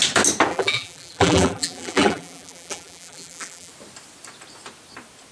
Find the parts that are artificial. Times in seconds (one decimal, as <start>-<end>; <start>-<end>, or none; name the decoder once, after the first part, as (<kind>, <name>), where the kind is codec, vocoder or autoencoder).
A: 0.5-3.7 (vocoder, BigVGAN v2)